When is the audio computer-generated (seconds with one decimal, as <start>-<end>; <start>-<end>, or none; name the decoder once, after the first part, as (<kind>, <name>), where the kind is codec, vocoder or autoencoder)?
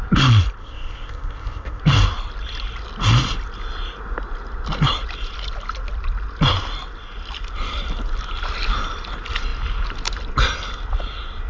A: 0.6-1.8 (codec, ZipCodec)